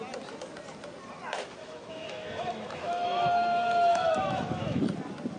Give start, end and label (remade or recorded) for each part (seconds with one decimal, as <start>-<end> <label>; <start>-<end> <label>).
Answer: 0.0-1.6 recorded; 1.6-4.8 remade; 4.8-5.4 recorded